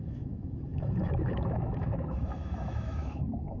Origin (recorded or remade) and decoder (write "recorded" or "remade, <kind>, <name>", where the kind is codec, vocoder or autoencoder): remade, autoencoder, DAC-VAE